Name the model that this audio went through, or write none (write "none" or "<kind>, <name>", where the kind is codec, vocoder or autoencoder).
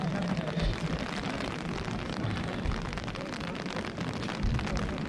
vocoder, BigVGAN v2